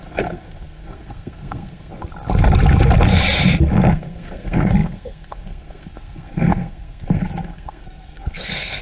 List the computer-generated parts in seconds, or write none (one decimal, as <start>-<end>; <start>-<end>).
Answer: 0.0-1.9; 3.9-8.8